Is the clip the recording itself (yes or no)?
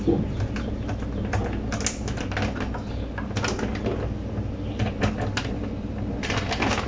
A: yes